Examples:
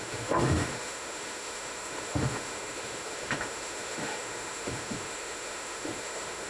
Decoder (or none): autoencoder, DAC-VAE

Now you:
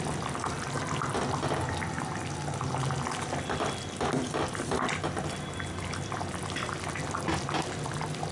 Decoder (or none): none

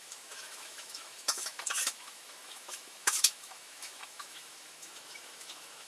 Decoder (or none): autoencoder, DAC-VAE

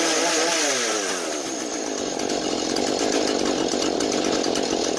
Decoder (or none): none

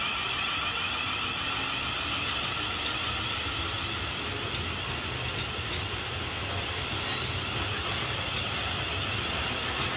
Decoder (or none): none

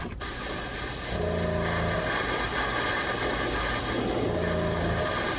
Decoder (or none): none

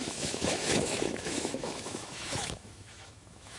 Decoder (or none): autoencoder, DAC-VAE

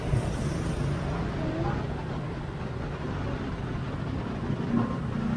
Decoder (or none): none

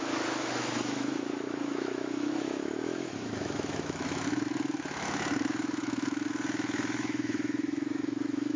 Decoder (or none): autoencoder, DAC-VAE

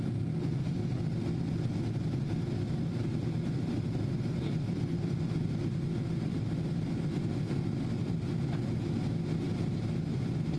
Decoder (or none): none